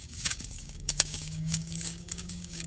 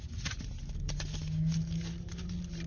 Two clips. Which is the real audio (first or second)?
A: second